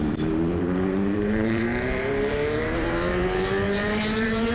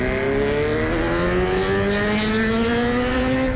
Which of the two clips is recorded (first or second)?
second